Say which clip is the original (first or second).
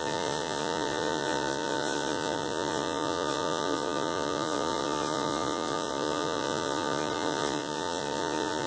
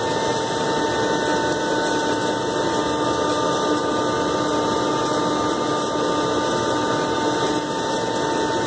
second